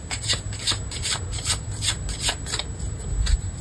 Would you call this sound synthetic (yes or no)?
no